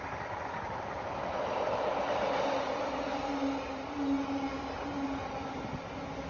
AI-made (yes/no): no